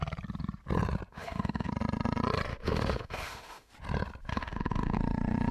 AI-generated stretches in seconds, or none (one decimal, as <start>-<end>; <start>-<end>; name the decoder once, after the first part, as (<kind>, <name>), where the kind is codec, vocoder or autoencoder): 1.1-1.7 (autoencoder, DAC-VAE); 2.5-3.7; 4.3-5.0